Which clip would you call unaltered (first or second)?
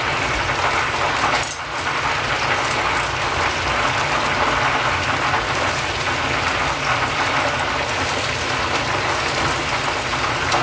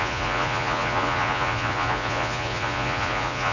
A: first